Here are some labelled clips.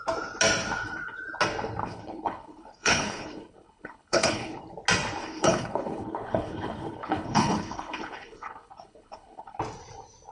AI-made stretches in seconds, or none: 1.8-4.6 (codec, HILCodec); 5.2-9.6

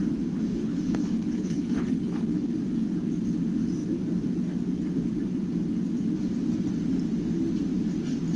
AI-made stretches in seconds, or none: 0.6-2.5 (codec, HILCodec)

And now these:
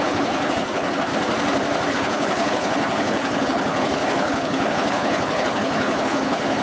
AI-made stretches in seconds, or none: 0.0-1.1 (codec, HILCodec); 1.9-6.6

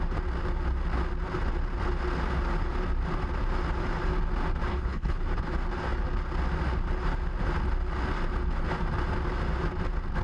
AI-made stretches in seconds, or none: 4.7-5.2 (codec, HILCodec)

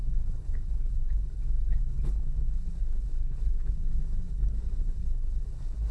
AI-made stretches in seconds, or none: 0.0-5.9 (codec, HILCodec)

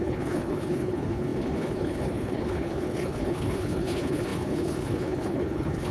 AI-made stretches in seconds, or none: 0.0-5.9 (codec, HILCodec)